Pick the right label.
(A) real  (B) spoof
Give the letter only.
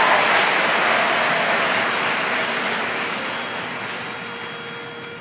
A